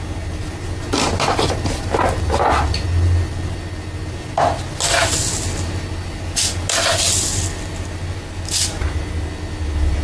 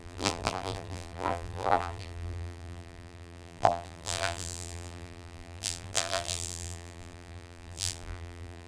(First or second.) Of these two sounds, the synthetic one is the second